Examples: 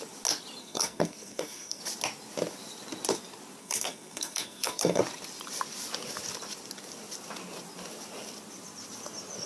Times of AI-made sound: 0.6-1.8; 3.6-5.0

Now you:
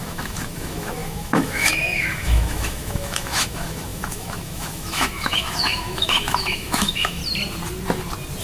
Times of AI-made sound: 0.0-7.2

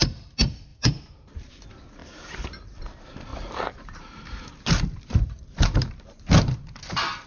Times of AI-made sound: 0.7-1.5; 2.0-2.8; 3.3-6.2